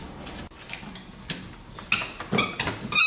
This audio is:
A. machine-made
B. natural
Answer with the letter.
B